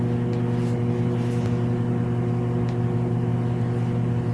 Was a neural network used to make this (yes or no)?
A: no